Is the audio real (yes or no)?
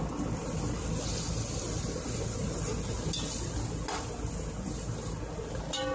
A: yes